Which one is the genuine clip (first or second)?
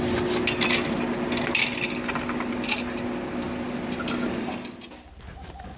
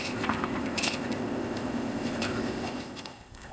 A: first